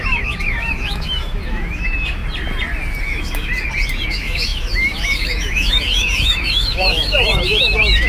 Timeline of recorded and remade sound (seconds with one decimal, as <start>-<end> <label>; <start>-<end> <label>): 0.0-2.2 remade; 2.2-3.0 recorded; 3.0-3.5 remade; 3.5-4.1 recorded; 4.1-8.1 remade